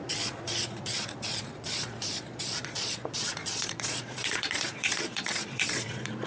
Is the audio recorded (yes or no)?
no